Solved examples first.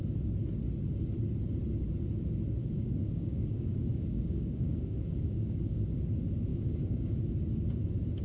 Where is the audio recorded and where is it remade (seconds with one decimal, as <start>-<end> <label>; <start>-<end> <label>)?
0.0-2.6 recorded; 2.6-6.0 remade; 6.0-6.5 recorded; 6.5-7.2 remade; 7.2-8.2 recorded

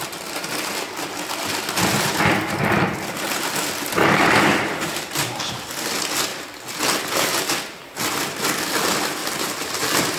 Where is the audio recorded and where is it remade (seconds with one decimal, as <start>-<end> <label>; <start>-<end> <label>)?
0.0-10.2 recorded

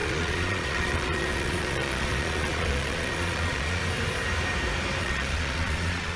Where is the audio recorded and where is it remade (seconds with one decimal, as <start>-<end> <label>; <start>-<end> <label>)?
0.0-3.8 remade; 3.8-5.0 recorded; 5.0-6.2 remade

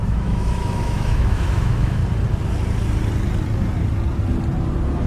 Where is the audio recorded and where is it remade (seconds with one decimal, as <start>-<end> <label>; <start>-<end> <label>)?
0.0-2.0 remade; 2.0-5.1 recorded